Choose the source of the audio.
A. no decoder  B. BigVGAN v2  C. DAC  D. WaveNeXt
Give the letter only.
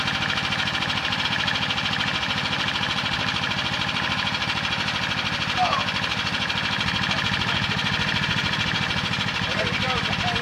B